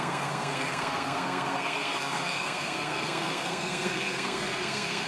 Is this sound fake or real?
fake